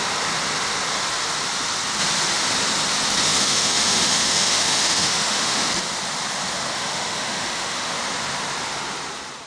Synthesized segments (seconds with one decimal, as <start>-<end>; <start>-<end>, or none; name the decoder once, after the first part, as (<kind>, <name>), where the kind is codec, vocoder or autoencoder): 3.3-5.7 (autoencoder, DAC-VAE); 6.7-7.9